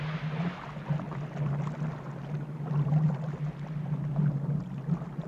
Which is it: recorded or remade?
recorded